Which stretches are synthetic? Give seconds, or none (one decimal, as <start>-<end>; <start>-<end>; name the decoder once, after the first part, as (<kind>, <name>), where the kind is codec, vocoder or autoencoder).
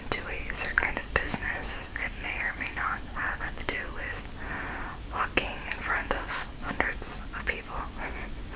0.7-4.3 (codec, DAC); 6.0-6.7